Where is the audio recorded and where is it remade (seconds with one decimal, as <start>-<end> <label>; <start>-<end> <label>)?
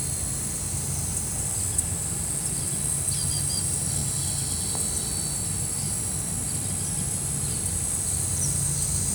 0.0-9.1 recorded